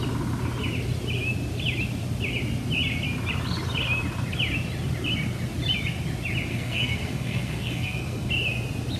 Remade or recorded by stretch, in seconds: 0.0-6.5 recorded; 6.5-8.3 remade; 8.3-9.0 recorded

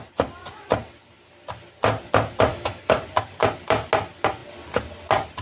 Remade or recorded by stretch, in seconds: 0.0-2.5 recorded; 2.5-3.0 remade; 3.0-5.4 recorded

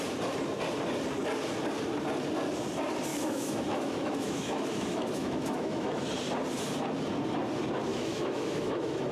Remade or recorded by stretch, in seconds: 0.0-3.1 recorded; 3.1-6.0 remade; 6.0-7.9 recorded; 7.9-9.1 remade

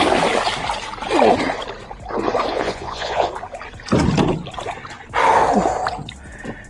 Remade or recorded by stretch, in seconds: 0.0-2.5 recorded; 2.5-3.3 remade; 3.3-6.7 recorded